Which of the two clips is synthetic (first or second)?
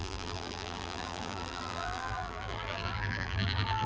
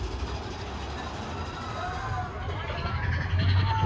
first